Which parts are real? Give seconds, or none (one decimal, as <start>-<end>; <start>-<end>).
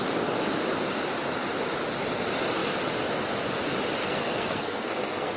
0.0-4.0